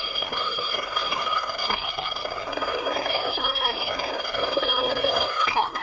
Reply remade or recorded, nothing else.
remade